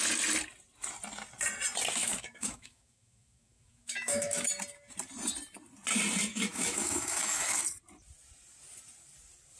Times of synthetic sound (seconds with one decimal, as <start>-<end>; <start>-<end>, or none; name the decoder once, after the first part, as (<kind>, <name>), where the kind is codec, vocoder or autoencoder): 2.0-4.5 (autoencoder, DAC-VAE); 6.3-7.6